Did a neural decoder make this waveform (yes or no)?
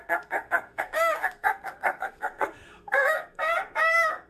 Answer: yes